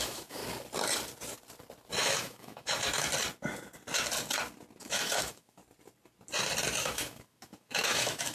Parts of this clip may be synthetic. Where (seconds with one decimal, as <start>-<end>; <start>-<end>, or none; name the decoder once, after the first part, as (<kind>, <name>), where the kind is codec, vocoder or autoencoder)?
0.0-0.4 (autoencoder, DAC-VAE); 2.0-3.1; 4.8-5.6; 6.8-8.3